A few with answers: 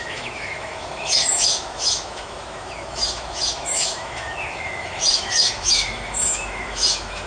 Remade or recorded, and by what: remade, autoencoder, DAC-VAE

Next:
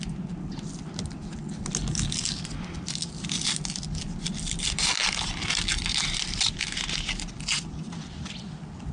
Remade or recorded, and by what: recorded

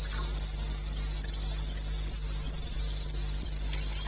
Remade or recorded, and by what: remade, vocoder, BigVGAN v2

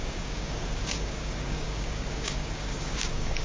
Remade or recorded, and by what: remade, codec, DAC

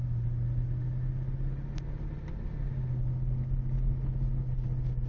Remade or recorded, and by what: recorded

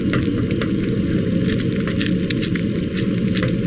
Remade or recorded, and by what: recorded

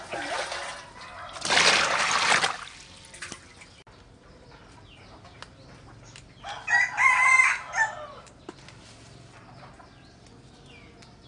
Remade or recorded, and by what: recorded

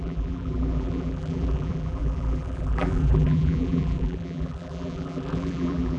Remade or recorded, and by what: remade, vocoder, BigVGAN v2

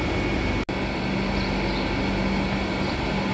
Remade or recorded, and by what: recorded